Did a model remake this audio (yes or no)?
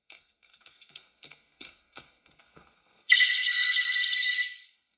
yes